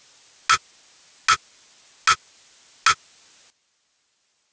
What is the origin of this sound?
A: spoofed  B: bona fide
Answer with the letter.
B